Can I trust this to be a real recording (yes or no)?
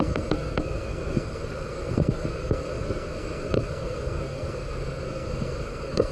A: no